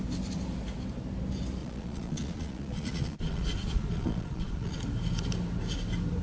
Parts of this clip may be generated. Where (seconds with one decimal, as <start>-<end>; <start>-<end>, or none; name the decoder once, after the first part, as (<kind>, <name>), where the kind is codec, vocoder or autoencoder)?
1.6-4.8 (vocoder, Vocos)